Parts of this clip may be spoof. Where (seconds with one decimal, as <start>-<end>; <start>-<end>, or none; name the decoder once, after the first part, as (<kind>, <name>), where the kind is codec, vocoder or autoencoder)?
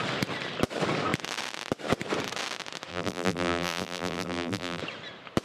2.9-4.8 (vocoder, BigVGAN v2)